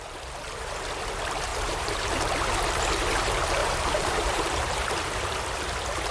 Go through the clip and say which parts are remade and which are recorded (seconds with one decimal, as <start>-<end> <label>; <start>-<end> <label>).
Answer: 0.0-1.5 recorded; 1.5-2.1 remade; 2.1-3.6 recorded; 3.6-4.8 remade; 4.8-6.1 recorded